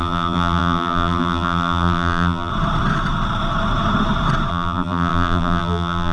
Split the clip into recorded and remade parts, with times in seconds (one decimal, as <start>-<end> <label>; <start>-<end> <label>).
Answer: 0.0-2.5 remade; 2.5-4.5 recorded; 4.5-6.1 remade